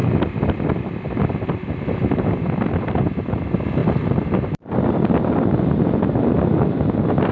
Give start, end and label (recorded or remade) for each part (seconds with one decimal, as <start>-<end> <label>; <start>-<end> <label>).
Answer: 0.0-7.3 recorded